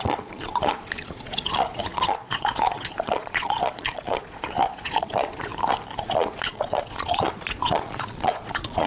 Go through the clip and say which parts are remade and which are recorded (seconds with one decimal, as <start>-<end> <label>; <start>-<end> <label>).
0.0-5.5 remade; 5.5-6.0 recorded; 6.0-8.9 remade